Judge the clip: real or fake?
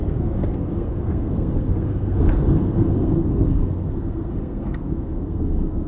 fake